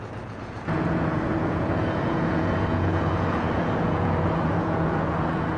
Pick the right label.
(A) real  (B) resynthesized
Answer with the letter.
B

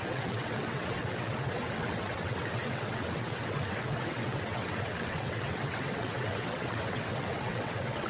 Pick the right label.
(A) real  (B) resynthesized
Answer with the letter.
B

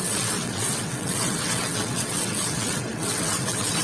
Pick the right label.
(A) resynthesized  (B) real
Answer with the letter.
A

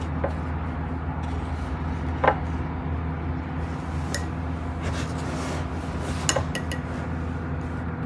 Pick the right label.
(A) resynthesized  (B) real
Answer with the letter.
B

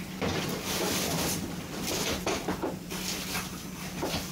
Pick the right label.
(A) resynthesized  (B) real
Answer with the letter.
B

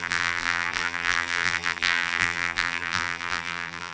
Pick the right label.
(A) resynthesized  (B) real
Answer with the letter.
A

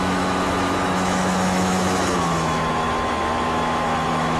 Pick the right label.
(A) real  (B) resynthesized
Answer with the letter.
B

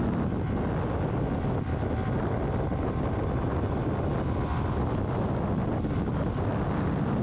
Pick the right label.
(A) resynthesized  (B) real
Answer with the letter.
B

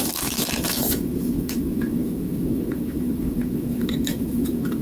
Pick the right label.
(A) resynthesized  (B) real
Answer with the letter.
A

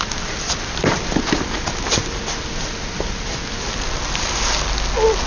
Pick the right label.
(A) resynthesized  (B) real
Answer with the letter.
B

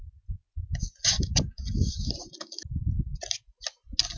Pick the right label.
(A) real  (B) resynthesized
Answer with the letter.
A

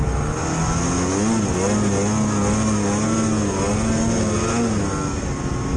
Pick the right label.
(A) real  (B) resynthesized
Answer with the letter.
A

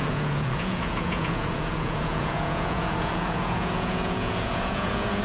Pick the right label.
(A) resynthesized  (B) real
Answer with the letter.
A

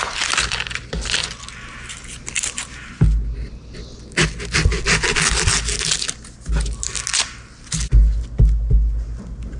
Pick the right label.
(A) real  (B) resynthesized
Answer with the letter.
A